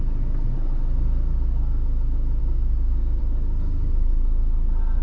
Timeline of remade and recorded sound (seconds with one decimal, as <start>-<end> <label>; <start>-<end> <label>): 0.0-2.4 recorded; 2.4-3.2 remade; 3.2-5.0 recorded